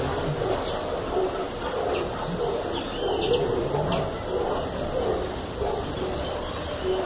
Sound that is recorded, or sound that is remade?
recorded